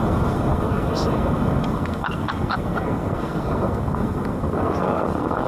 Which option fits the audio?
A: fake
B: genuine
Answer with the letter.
A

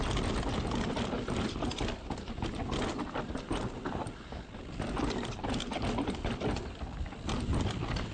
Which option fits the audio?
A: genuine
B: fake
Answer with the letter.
A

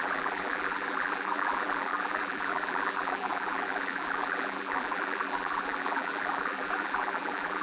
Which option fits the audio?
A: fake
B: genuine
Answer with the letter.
A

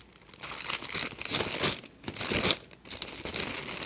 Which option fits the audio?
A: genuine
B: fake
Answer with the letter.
A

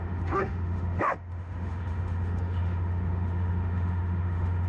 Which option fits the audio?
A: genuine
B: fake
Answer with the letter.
B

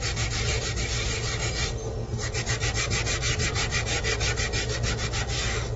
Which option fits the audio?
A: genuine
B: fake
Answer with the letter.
A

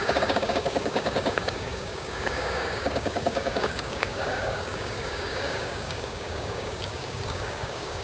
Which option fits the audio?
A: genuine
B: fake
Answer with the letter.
B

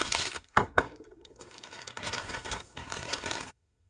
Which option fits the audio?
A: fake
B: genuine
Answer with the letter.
A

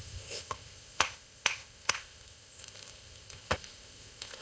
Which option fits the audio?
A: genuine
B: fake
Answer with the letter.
B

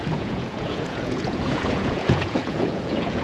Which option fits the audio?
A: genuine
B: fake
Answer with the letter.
B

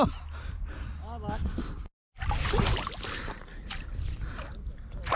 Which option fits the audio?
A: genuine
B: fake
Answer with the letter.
A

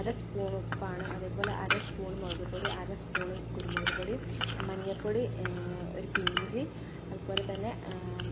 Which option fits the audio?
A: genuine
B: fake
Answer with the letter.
A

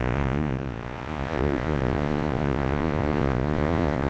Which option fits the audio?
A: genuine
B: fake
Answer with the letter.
B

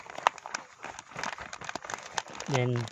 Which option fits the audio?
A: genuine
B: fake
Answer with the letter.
A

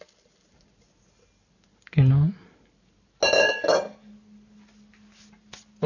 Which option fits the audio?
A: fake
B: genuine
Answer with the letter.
B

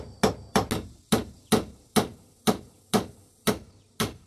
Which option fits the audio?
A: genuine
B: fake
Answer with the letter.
A